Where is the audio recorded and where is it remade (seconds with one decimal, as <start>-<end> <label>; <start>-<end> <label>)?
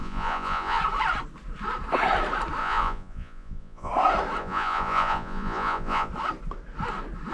0.0-0.8 remade; 0.8-2.6 recorded; 2.6-3.9 remade; 3.9-4.4 recorded; 4.4-6.1 remade; 6.1-7.3 recorded